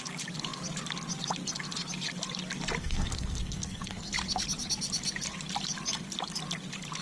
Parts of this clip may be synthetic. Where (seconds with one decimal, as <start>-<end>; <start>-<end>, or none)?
2.8-4.1